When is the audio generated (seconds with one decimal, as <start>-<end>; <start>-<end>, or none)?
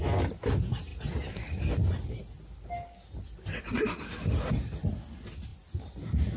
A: none